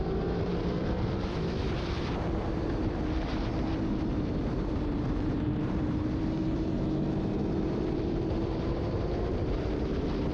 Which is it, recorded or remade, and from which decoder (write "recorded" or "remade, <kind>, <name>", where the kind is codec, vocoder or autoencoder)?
remade, vocoder, BigVGAN v2